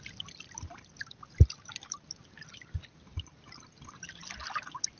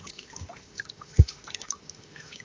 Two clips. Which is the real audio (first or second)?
first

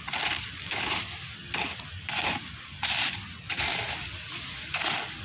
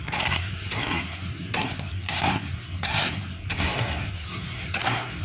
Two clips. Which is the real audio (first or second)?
first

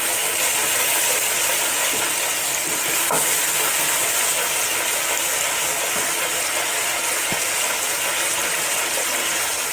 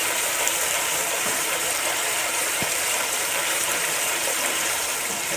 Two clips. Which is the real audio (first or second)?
first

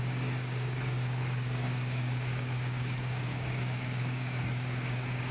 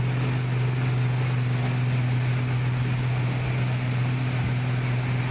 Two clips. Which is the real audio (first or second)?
second